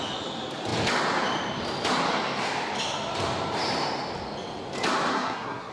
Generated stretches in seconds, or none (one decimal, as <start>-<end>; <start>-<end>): 5.1-5.7